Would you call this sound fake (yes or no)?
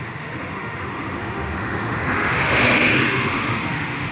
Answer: yes